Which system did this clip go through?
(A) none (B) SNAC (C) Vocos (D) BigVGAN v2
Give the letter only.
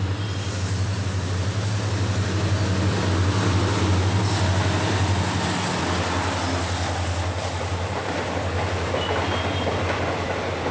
A